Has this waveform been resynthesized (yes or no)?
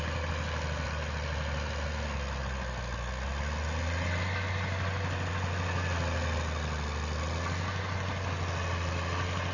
no